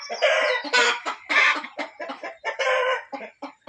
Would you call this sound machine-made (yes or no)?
yes